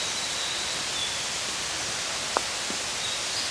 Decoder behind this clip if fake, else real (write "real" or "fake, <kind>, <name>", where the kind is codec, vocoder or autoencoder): real